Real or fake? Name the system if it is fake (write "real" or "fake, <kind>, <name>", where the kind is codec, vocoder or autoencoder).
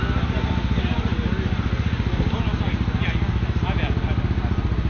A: real